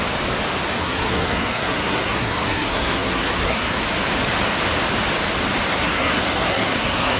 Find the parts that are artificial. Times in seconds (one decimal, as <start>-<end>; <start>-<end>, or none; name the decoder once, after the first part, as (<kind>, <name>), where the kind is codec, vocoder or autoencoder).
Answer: 0.8-3.8 (codec, SNAC); 5.7-7.2